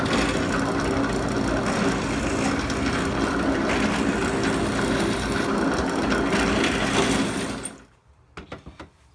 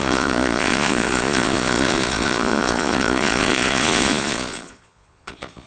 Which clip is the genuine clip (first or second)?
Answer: first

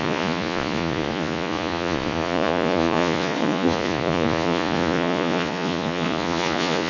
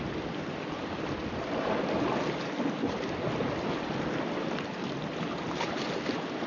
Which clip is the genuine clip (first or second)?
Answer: second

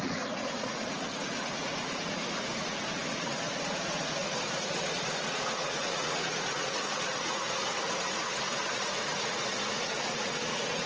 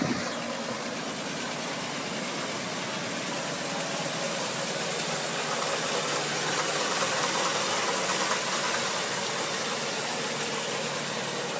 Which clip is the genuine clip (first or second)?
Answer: second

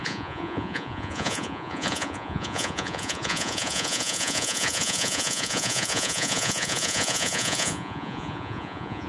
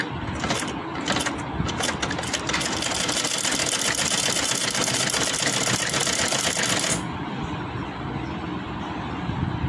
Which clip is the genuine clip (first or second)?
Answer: second